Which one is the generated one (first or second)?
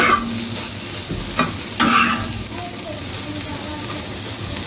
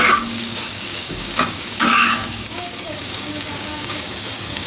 second